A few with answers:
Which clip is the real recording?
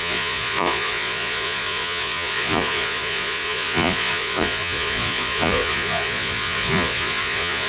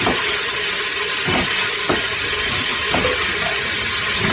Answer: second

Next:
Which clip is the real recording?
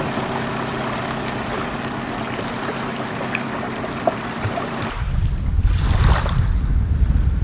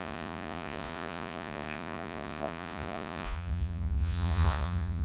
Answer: first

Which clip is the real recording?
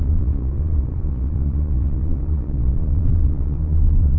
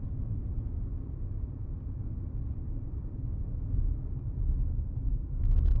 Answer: second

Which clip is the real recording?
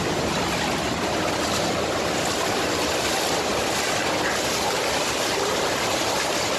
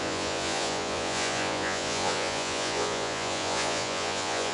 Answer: first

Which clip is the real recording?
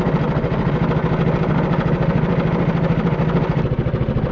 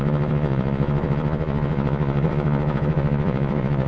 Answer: first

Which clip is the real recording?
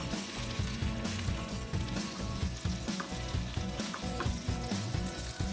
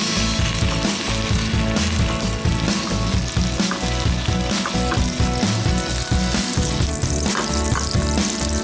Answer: second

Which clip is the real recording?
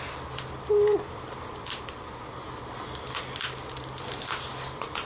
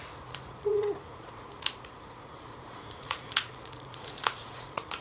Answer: first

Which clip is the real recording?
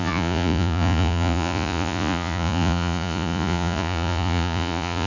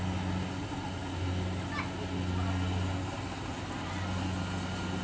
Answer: second